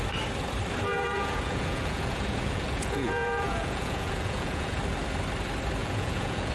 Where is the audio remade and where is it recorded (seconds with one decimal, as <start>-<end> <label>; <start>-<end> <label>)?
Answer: 0.0-0.9 recorded; 0.9-4.8 remade; 4.8-5.8 recorded; 5.8-6.5 remade